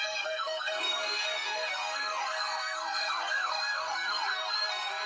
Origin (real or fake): fake